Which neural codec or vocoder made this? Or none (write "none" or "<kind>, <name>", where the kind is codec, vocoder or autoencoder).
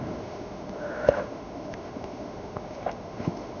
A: autoencoder, DAC-VAE